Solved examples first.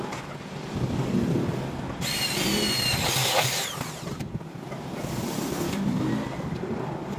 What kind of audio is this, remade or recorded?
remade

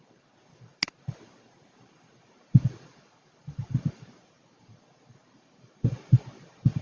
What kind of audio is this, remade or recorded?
remade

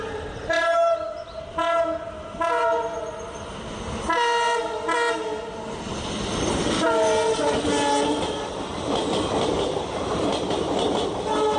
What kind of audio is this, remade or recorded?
recorded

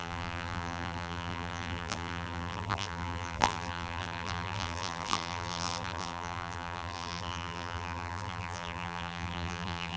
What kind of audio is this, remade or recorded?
remade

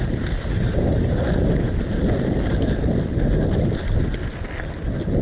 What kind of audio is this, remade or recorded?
recorded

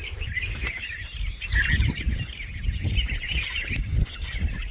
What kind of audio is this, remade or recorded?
recorded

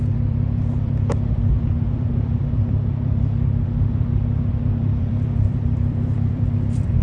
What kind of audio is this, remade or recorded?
remade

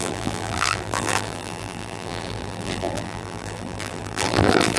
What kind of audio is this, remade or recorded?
remade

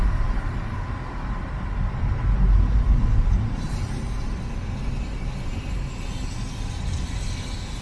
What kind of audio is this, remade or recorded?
recorded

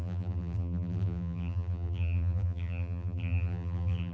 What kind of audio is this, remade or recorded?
remade